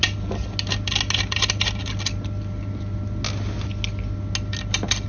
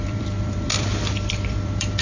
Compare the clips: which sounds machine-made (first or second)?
second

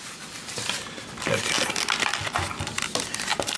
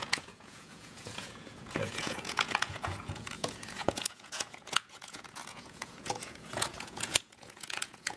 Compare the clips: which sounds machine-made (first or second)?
second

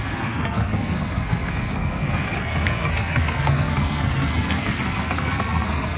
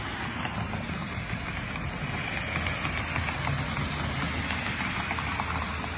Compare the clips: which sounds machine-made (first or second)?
first